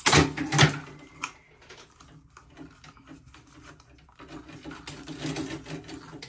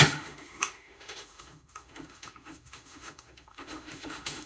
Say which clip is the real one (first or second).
first